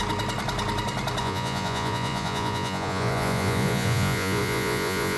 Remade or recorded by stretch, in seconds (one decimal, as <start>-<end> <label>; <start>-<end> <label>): 0.0-1.2 recorded; 1.2-5.2 remade